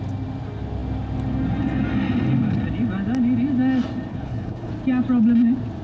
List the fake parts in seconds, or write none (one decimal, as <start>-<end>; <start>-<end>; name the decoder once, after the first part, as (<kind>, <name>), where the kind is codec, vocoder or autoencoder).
4.1-4.7 (codec, HILCodec)